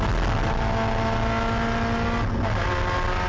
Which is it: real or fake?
real